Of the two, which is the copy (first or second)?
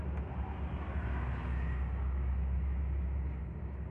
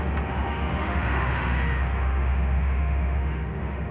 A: second